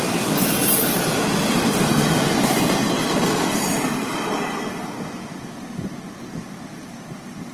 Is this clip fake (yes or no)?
no